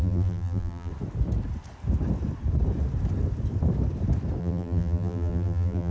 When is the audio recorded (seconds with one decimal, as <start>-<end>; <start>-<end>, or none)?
0.9-4.4